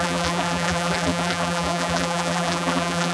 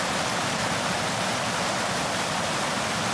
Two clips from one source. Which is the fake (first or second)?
first